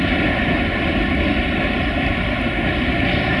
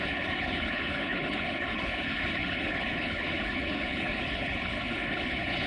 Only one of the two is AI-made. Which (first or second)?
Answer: second